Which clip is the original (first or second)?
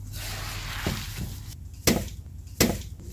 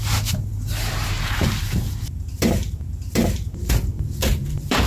first